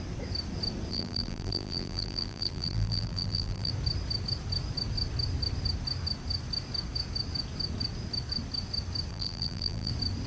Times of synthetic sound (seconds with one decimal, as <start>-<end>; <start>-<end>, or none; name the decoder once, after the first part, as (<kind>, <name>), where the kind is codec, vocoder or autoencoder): 0.9-3.7 (vocoder, BigVGAN v2); 9.1-9.9